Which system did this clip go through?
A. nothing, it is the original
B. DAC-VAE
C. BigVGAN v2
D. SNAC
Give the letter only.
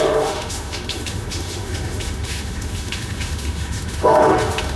B